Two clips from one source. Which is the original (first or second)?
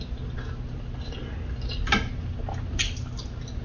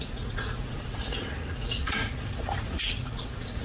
first